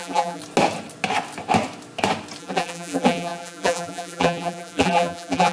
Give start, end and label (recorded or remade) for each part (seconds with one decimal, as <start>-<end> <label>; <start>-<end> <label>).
0.0-0.4 remade; 0.4-2.4 recorded; 2.4-5.5 remade